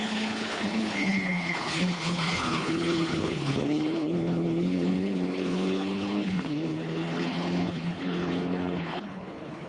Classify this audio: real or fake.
fake